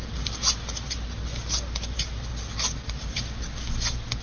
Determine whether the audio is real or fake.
real